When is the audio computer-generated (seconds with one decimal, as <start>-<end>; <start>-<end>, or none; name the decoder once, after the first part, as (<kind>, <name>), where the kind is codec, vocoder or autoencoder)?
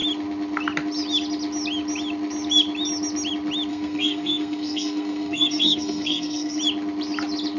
3.7-6.6 (codec, SNAC)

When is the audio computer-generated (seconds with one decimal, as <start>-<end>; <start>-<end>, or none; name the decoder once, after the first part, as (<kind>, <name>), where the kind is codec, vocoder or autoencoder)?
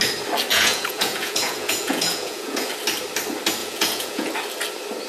0.5-2.7 (vocoder, Vocos); 3.6-4.3